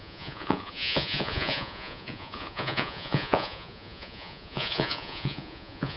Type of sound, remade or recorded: remade